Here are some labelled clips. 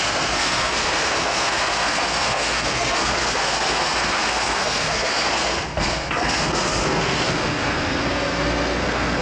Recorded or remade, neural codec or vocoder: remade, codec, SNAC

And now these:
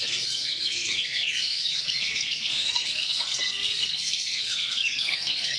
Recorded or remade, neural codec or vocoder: remade, codec, SNAC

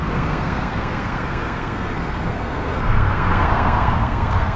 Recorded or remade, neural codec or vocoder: remade, codec, SNAC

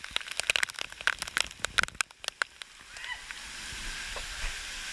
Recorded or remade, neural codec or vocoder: recorded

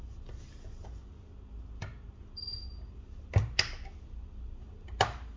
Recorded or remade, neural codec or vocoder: recorded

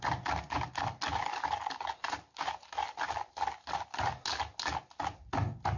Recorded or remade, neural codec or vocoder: recorded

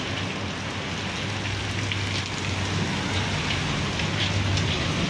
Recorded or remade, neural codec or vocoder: recorded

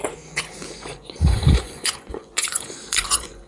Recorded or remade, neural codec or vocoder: remade, vocoder, Vocos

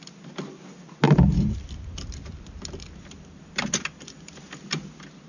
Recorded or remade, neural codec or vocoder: recorded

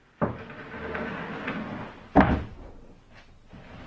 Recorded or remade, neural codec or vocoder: recorded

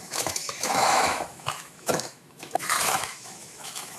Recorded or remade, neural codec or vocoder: remade, autoencoder, DAC-VAE